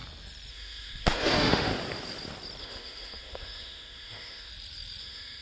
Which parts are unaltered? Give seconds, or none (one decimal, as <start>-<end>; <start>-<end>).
0.0-0.5; 1.7-2.6; 4.5-5.0